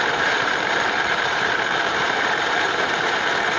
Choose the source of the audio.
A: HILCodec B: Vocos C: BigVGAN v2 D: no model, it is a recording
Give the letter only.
C